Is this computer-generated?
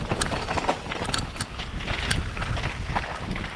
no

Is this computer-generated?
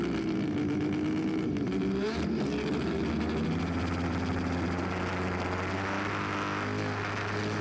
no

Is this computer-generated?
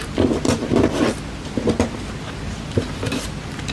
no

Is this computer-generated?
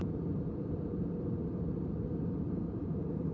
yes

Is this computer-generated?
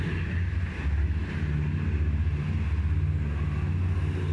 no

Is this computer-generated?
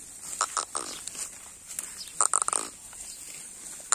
no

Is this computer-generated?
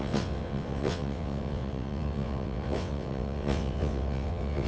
yes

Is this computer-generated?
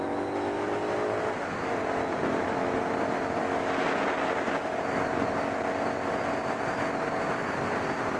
no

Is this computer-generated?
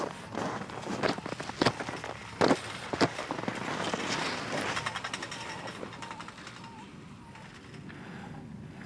no